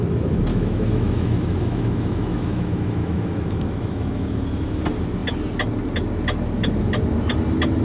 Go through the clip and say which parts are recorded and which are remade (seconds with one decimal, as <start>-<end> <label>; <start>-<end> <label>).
0.0-0.5 recorded; 0.5-4.8 remade; 4.8-7.8 recorded